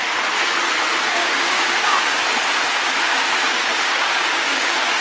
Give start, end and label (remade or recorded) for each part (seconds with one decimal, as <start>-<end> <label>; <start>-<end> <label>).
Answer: 0.0-1.0 recorded; 1.0-2.2 remade; 2.2-3.0 recorded; 3.0-5.0 remade